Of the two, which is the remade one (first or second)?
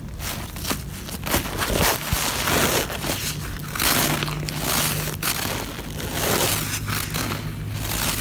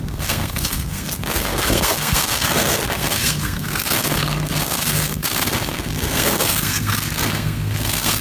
second